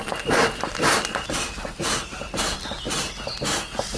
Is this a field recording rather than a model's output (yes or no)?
yes